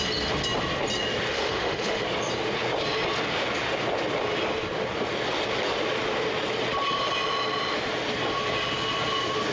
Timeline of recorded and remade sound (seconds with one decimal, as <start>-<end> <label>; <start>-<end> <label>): 0.0-1.3 recorded; 1.3-2.0 remade; 2.0-9.5 recorded